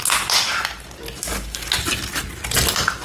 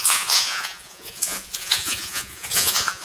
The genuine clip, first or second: first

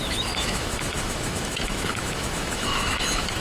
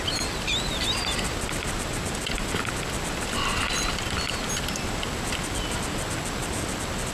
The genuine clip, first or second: second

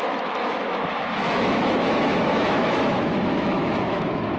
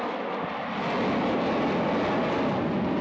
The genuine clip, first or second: second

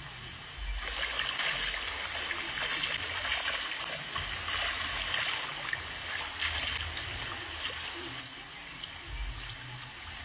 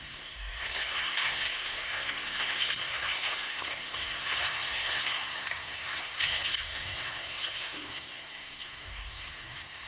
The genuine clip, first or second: first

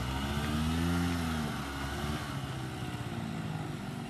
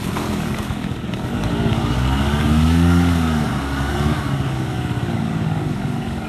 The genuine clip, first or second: first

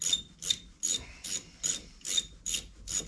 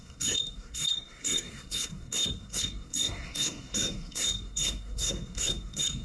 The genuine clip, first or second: first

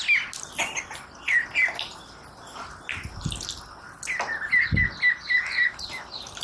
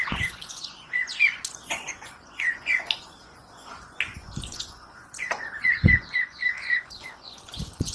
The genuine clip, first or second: first